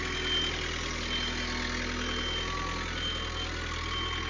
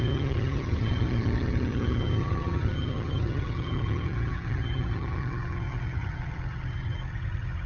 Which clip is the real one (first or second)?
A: first